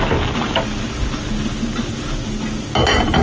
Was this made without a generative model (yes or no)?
yes